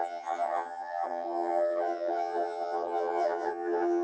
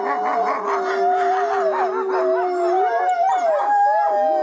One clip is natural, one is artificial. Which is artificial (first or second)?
first